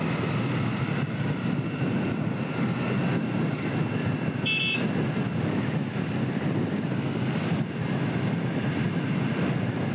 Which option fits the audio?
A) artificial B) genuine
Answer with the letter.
B